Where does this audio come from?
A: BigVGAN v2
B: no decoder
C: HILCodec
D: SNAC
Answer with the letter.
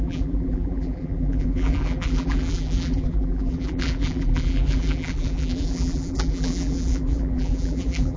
A